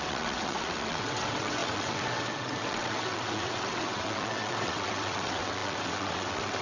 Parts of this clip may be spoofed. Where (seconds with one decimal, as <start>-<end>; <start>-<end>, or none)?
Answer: 0.0-6.6